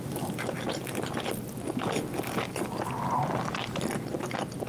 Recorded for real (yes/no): yes